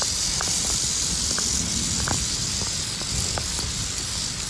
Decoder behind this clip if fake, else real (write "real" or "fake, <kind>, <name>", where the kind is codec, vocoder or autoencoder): real